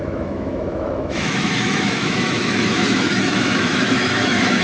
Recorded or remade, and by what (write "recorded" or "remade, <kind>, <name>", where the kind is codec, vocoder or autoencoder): remade, autoencoder, DAC-VAE